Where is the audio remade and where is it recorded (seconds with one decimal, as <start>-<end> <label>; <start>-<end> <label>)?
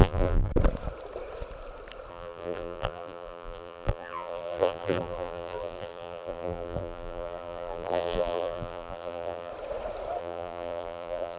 0.0-0.5 remade; 0.5-2.1 recorded; 2.1-9.5 remade; 9.5-10.2 recorded; 10.2-11.4 remade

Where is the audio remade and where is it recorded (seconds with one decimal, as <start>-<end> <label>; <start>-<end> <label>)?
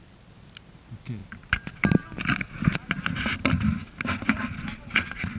0.0-1.2 recorded; 1.2-2.4 remade; 2.4-5.4 recorded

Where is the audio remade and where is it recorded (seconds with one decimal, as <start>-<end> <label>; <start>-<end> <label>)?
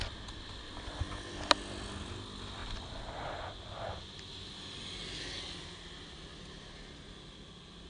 0.0-7.9 recorded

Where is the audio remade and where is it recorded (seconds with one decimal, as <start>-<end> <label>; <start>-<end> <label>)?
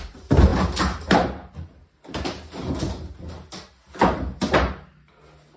0.0-5.6 recorded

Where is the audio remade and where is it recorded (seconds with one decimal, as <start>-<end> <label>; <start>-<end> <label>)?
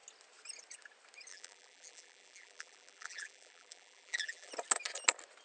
0.0-1.3 recorded; 1.3-4.5 remade; 4.5-5.4 recorded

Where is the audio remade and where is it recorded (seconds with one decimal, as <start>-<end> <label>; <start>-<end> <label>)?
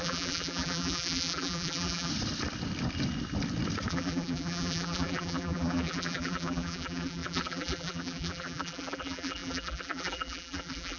0.0-2.1 remade; 2.1-3.9 recorded; 3.9-11.0 remade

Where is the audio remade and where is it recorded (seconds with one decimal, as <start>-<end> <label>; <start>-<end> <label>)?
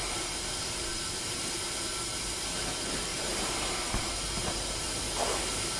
0.0-1.3 remade; 1.3-3.1 recorded; 3.1-3.9 remade; 3.9-4.4 recorded; 4.4-5.0 remade; 5.0-5.8 recorded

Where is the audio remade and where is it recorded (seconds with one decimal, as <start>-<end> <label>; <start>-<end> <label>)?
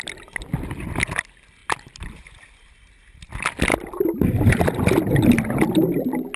0.0-1.6 recorded; 1.6-2.7 remade; 2.7-3.7 recorded; 3.7-5.1 remade; 5.1-6.4 recorded